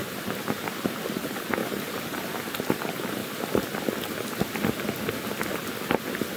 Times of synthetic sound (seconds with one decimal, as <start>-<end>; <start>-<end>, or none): 0.0-1.1; 1.6-2.6